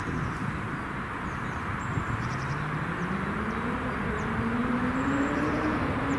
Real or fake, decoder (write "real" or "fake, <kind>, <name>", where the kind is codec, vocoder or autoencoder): fake, vocoder, BigVGAN v2